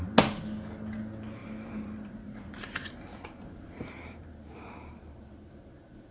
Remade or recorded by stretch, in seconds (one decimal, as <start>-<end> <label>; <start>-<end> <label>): 0.0-1.4 recorded; 1.4-5.1 remade; 5.1-6.1 recorded